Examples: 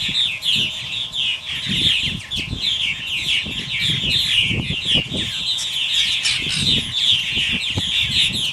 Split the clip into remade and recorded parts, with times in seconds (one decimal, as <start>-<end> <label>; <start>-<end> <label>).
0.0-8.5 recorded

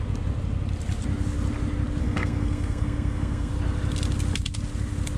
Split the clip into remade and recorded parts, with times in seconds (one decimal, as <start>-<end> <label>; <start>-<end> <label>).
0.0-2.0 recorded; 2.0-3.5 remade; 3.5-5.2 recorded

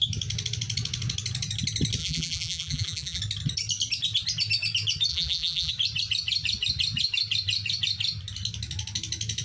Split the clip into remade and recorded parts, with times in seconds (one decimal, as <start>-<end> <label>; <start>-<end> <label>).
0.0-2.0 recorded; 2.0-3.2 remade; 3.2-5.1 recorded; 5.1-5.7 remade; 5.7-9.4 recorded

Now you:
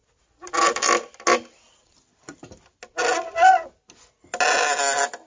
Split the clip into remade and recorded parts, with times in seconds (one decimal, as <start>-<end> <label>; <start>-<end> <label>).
0.0-5.3 recorded

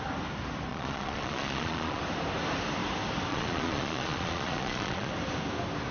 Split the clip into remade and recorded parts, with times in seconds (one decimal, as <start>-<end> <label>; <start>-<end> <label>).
0.0-0.7 recorded; 0.7-2.0 remade; 2.0-3.3 recorded; 3.3-5.1 remade; 5.1-5.9 recorded

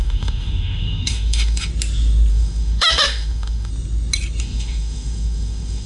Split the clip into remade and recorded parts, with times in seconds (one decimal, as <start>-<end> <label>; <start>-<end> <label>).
0.0-1.7 remade; 1.7-2.3 recorded; 2.3-3.7 remade; 3.7-4.4 recorded; 4.4-5.9 remade

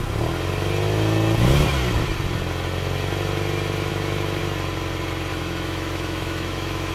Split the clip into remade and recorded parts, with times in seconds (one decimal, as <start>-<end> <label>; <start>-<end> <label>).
0.0-3.9 recorded; 3.9-4.4 remade; 4.4-5.3 recorded; 5.3-6.9 remade